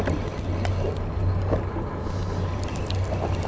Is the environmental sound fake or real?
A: real